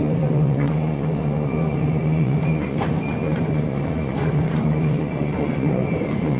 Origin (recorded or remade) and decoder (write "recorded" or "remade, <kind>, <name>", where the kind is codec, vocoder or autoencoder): remade, vocoder, Vocos